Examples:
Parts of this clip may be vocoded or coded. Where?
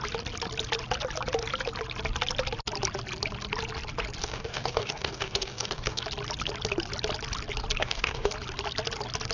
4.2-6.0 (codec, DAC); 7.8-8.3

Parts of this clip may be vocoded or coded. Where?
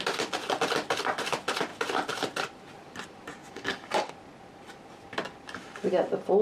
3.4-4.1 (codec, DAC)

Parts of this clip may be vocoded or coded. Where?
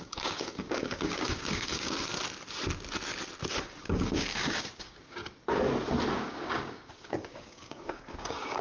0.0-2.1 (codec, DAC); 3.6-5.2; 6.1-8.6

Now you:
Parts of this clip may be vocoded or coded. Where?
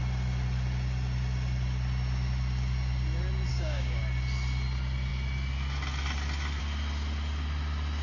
3.5-4.0 (codec, DAC)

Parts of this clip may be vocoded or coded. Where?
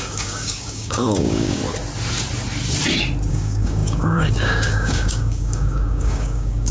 0.0-1.6 (codec, DAC); 3.3-6.7